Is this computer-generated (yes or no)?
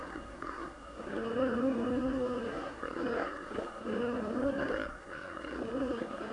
yes